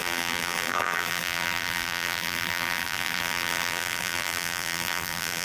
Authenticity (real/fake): fake